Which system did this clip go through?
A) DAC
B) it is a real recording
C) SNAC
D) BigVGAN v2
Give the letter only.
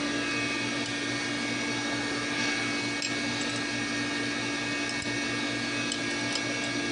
B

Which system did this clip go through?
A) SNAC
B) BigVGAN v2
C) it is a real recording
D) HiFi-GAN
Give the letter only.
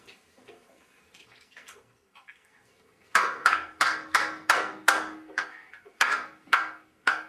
A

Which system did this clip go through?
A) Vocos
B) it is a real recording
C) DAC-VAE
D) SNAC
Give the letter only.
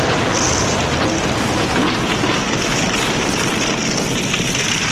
B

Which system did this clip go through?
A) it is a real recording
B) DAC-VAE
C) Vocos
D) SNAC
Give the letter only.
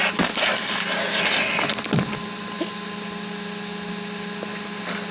A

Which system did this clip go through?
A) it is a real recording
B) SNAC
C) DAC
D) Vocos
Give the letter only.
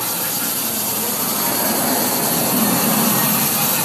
A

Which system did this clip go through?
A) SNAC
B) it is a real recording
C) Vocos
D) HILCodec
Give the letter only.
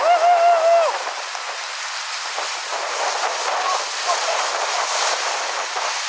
B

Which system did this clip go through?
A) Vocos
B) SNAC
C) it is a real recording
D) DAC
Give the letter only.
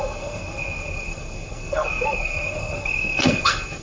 B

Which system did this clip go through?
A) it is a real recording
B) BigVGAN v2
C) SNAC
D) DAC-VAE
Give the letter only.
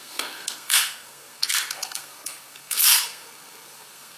C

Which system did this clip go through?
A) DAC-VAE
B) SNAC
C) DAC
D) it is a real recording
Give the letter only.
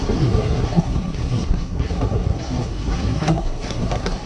B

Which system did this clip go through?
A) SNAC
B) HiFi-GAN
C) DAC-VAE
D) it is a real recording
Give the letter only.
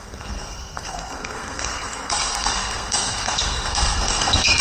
A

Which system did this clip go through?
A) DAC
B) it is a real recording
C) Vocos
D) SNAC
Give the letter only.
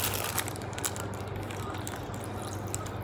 B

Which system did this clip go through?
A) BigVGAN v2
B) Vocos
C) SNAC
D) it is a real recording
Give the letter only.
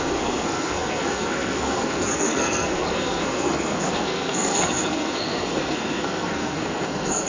C